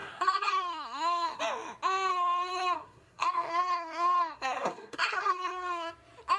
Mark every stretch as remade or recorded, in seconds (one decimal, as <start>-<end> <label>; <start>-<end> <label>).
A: 0.0-1.4 remade; 1.4-2.1 recorded; 2.1-5.9 remade; 5.9-6.4 recorded